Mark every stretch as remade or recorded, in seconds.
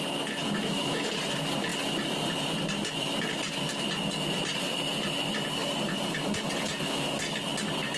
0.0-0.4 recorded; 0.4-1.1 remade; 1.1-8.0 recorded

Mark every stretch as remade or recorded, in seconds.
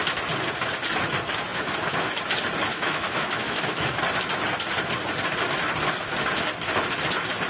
0.0-2.7 recorded; 2.7-4.0 remade; 4.0-7.5 recorded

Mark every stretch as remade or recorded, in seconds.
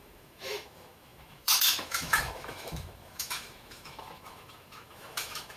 0.0-5.6 remade